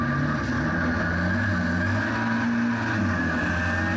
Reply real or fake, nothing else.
real